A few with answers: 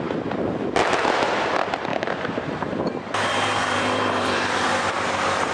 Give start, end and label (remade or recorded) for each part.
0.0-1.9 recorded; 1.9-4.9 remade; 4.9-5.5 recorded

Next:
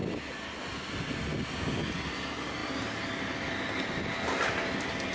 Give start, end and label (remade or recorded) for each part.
0.0-5.1 recorded